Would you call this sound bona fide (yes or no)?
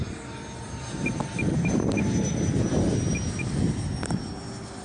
yes